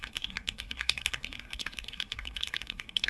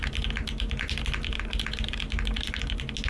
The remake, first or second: first